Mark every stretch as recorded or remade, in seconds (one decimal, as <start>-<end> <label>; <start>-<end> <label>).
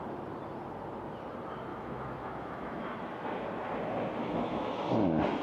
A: 0.0-1.7 recorded; 1.7-2.8 remade; 2.8-4.2 recorded; 4.2-4.7 remade; 4.7-5.4 recorded